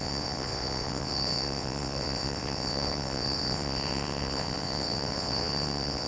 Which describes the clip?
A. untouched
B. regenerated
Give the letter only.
B